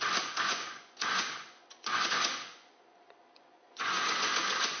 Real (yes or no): no